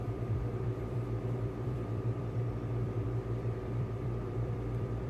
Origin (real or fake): fake